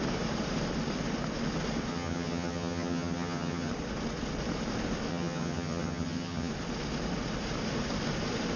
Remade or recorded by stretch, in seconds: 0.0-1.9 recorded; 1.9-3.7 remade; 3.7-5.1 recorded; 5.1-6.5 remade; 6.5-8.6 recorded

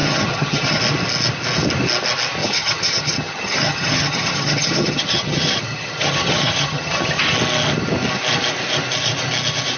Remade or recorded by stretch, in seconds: 0.0-0.8 remade; 0.8-2.4 recorded; 2.4-7.2 remade; 7.2-9.8 recorded

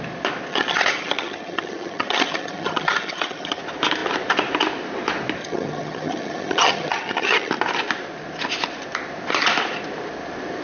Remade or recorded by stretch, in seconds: 0.0-0.5 recorded; 0.5-3.6 remade; 3.6-5.4 recorded; 5.4-7.5 remade; 7.5-10.6 recorded

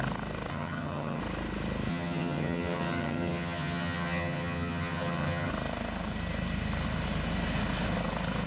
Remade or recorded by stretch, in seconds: 0.0-0.5 recorded; 0.5-1.2 remade; 1.2-1.9 recorded; 1.9-5.5 remade; 5.5-8.5 recorded

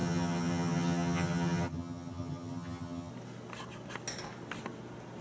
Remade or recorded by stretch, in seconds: 0.0-3.1 remade; 3.1-5.2 recorded